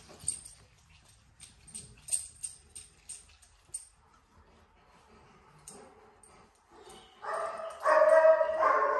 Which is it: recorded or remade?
recorded